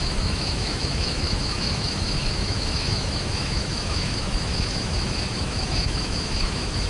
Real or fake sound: fake